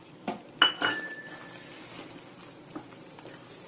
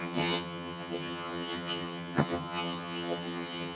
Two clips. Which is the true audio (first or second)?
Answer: first